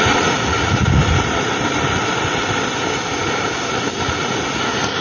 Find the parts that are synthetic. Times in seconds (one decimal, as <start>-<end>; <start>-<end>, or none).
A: 0.0-1.0; 4.0-5.0